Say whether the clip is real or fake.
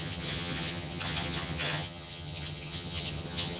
fake